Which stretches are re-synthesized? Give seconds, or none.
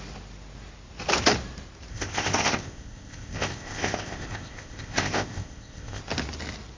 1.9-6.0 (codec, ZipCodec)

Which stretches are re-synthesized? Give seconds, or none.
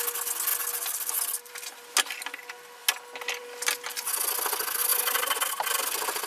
none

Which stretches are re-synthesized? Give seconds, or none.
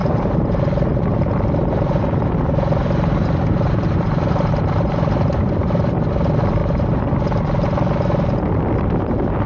0.0-0.6 (vocoder, BigVGAN v2); 2.8-5.3; 6.6-7.1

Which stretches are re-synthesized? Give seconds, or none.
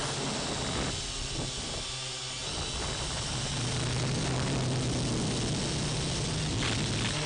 none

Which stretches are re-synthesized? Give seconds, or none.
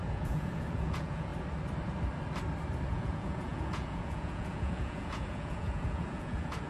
0.0-1.3 (vocoder, Vocos); 2.9-6.7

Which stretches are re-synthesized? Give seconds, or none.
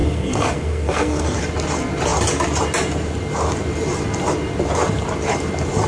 0.0-1.4 (codec, SNAC)